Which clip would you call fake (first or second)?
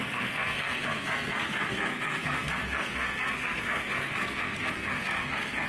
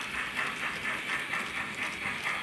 first